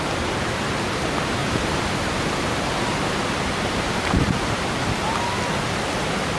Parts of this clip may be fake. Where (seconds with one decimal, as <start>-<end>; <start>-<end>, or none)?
1.4-4.9